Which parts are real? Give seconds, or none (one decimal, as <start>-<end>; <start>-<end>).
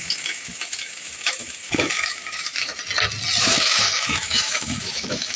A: 2.7-3.4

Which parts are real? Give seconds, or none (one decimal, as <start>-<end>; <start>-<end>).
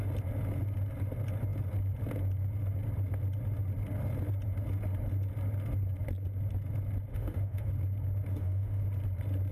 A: 0.0-7.1; 7.7-8.3; 8.8-9.5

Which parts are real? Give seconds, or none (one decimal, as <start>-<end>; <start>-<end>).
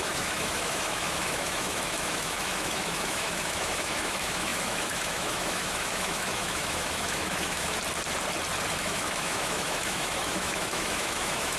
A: 7.8-8.7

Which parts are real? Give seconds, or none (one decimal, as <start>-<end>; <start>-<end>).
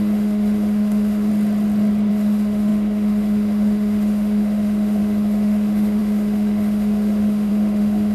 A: 1.3-2.1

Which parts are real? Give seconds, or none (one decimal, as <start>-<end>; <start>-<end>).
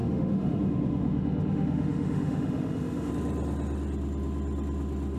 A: 3.1-5.2